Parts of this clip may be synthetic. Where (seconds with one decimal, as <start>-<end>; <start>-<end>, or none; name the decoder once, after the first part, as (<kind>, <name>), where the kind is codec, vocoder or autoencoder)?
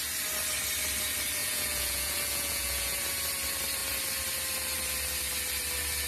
1.4-3.0 (vocoder, Vocos)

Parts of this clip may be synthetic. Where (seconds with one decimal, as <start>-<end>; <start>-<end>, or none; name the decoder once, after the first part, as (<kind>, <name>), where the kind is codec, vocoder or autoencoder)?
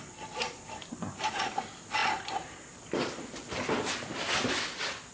none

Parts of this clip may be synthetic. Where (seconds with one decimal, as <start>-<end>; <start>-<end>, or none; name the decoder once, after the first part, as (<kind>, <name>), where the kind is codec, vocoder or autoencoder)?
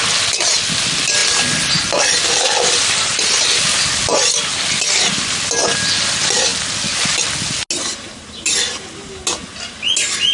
none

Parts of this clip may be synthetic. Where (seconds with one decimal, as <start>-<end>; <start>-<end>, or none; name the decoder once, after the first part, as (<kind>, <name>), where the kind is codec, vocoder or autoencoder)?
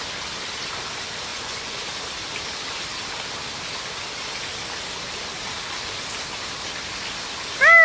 1.3-1.8 (vocoder, Vocos)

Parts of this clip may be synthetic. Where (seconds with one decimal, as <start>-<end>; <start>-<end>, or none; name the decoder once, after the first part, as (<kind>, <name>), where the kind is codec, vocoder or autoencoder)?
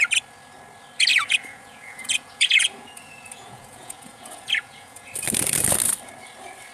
1.1-5.1 (vocoder, Vocos)